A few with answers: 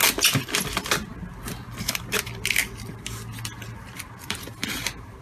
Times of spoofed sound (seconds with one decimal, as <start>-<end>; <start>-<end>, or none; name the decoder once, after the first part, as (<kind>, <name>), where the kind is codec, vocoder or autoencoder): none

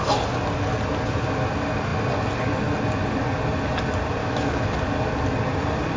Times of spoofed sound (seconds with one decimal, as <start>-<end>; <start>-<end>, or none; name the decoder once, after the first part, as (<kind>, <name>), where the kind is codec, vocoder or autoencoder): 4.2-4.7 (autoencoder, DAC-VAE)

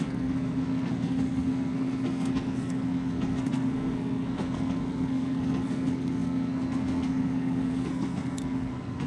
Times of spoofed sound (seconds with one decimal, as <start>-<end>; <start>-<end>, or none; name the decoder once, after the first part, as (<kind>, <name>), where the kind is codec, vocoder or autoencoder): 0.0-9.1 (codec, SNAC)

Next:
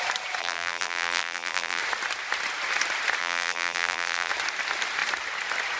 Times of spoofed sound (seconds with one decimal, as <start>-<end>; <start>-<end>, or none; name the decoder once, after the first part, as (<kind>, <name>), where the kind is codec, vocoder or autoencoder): 0.4-1.8 (vocoder, BigVGAN v2); 3.2-4.3

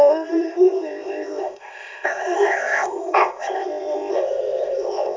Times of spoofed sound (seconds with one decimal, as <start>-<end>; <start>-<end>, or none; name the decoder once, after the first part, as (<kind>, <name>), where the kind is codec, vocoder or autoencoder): 0.0-5.2 (codec, ZipCodec)

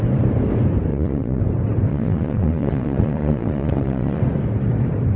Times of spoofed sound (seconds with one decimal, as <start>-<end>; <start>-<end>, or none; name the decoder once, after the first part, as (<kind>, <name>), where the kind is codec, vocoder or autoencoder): 0.9-1.4 (vocoder, Vocos); 1.9-4.2

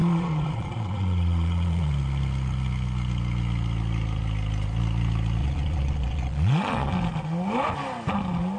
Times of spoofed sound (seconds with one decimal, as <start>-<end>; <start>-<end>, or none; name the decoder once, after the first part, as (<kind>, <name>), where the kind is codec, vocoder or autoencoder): 0.0-1.9 (vocoder, Vocos); 5.4-6.9

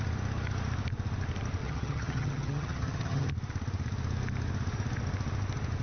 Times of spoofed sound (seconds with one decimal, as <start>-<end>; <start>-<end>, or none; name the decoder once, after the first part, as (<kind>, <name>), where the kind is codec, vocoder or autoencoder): 1.6-3.3 (vocoder, HiFi-GAN)